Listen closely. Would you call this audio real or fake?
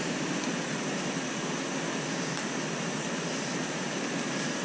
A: real